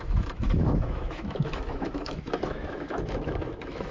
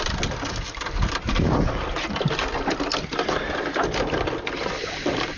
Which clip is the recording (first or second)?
second